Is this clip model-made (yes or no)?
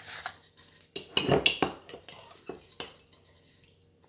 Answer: no